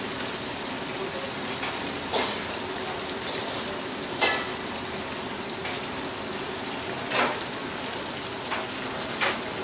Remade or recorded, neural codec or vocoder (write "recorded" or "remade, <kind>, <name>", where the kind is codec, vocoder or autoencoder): recorded